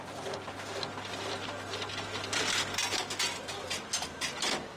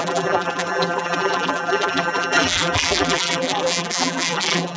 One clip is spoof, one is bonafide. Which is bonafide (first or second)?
first